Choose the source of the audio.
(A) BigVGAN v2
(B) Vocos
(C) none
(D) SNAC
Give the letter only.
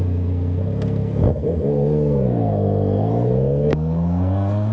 D